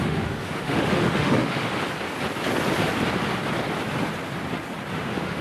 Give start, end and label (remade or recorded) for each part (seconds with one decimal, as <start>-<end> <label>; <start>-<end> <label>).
0.0-1.7 remade; 1.7-4.9 recorded; 4.9-5.4 remade